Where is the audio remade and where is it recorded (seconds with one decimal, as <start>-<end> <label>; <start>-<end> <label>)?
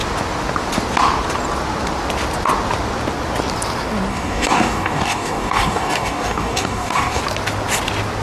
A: 0.0-4.1 recorded; 4.1-7.2 remade; 7.2-8.2 recorded